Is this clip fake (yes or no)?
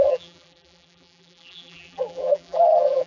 yes